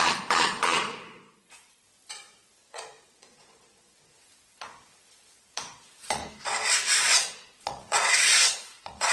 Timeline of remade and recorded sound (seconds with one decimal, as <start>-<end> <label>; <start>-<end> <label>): 0.0-6.2 remade; 6.2-6.9 recorded; 6.9-9.1 remade